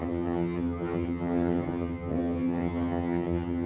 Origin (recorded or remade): remade